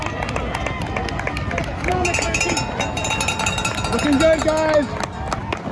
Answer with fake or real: real